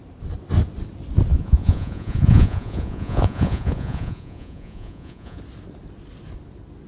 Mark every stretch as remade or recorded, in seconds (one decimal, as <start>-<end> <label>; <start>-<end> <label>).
0.0-1.3 recorded; 1.3-5.4 remade; 5.4-6.9 recorded